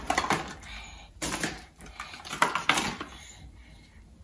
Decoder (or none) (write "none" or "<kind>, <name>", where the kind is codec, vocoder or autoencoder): none